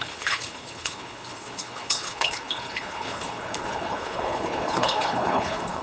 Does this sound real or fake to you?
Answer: fake